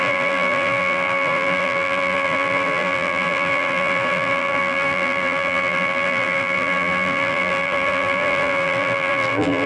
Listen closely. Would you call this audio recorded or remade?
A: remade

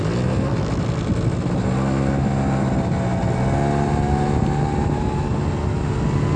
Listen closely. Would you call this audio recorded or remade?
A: recorded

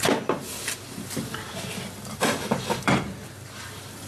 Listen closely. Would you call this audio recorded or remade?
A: remade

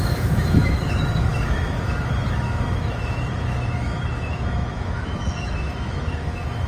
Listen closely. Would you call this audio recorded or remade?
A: remade